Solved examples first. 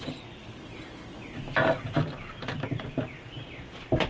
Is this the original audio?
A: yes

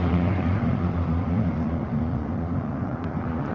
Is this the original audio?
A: no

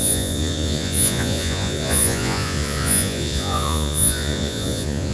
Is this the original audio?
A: no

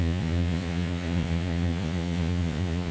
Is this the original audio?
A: no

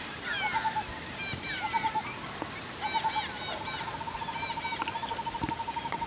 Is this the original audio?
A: yes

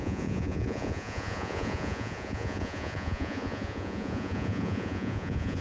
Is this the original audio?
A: no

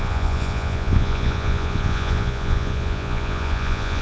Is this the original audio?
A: no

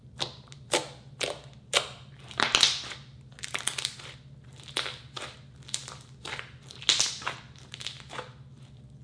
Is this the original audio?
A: yes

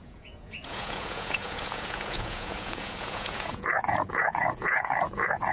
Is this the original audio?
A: no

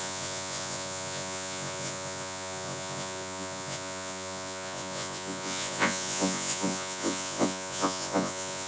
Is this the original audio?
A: no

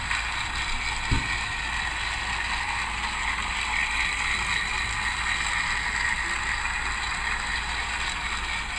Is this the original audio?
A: yes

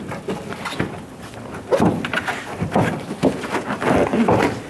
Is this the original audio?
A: yes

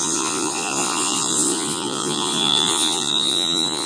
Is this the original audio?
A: no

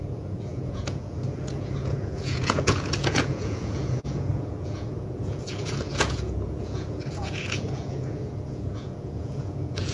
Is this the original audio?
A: no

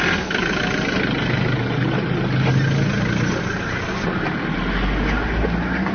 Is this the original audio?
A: yes